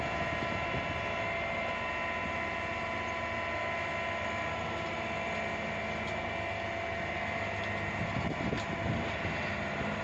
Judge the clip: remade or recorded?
recorded